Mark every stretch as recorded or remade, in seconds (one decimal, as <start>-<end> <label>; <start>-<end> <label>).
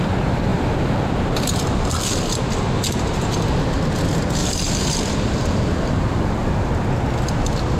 0.0-0.5 recorded; 0.5-1.9 remade; 1.9-4.4 recorded; 4.4-6.7 remade; 6.7-7.8 recorded